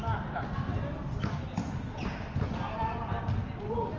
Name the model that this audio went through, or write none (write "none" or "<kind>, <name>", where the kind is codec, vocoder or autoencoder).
none